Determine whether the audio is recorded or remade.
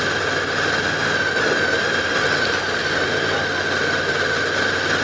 recorded